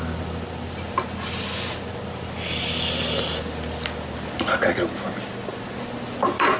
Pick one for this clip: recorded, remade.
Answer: recorded